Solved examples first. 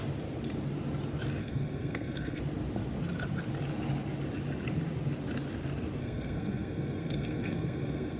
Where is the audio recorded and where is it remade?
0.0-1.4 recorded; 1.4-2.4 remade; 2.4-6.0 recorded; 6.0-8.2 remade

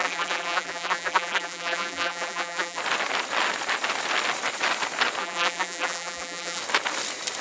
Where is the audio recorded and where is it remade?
0.0-2.8 remade; 2.8-5.2 recorded; 5.2-6.6 remade; 6.6-7.4 recorded

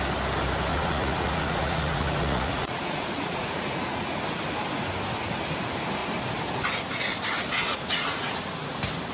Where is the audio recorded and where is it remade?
0.0-0.7 recorded; 0.7-4.2 remade; 4.2-7.7 recorded; 7.7-8.7 remade; 8.7-9.1 recorded

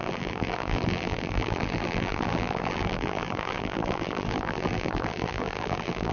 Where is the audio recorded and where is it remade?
0.0-6.1 remade

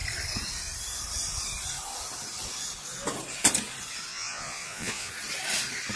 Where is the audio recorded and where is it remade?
0.0-4.1 recorded; 4.1-5.1 remade; 5.1-6.0 recorded